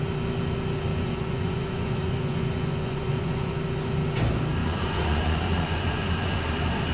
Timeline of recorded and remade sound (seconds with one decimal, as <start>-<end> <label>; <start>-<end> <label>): 0.0-0.9 recorded; 0.9-3.5 remade; 3.5-4.6 recorded; 4.6-6.4 remade; 6.4-6.9 recorded